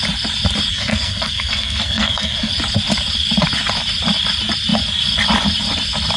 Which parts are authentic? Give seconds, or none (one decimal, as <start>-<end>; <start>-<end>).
0.0-0.7; 2.5-6.2